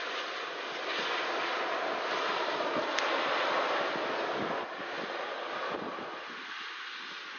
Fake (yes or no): no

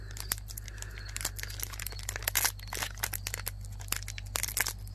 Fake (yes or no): no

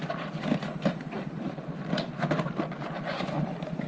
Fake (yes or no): no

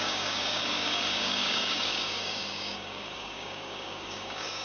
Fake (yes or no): yes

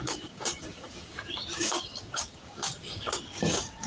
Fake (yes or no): yes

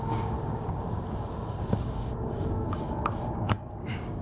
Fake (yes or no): yes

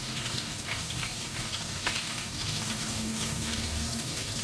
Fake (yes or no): yes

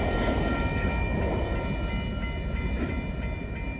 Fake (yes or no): no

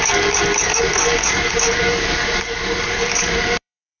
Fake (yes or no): yes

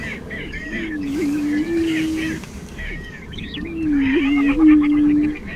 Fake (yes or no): yes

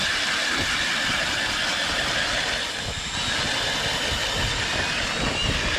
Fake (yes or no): no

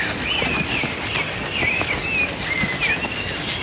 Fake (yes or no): no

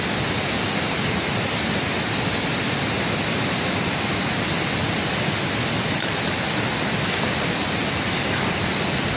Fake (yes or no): no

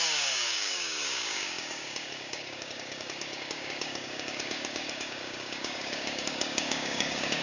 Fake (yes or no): yes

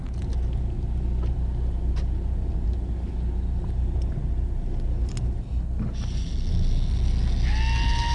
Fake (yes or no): no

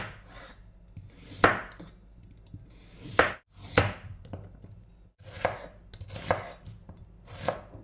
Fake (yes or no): no